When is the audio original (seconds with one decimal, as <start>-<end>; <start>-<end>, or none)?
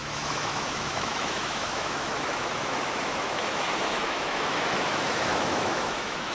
none